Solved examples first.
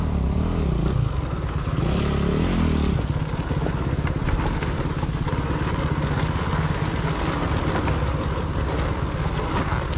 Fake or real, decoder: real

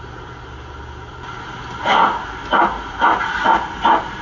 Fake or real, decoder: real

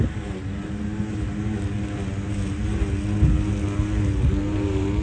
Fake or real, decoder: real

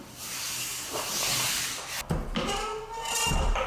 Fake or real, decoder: real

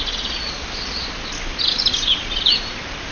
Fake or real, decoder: real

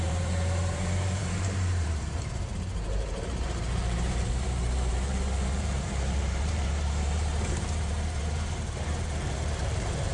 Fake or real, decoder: fake, vocoder, BigVGAN v2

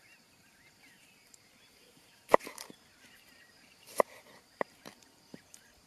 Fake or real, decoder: fake, vocoder, BigVGAN v2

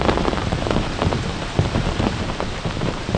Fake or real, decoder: fake, vocoder, BigVGAN v2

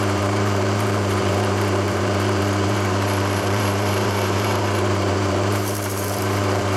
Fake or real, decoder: fake, vocoder, BigVGAN v2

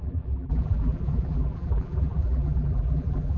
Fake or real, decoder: fake, vocoder, BigVGAN v2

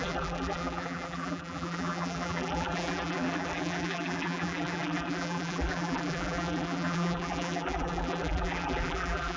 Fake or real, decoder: fake, vocoder, BigVGAN v2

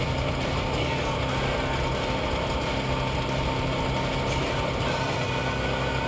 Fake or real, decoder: real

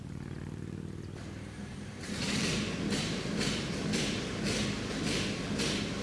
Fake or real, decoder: fake, vocoder, BigVGAN v2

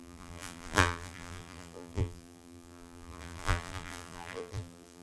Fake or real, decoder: fake, vocoder, BigVGAN v2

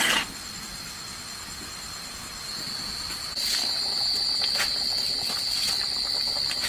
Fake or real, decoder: real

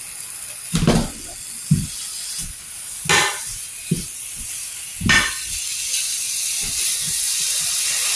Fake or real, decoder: real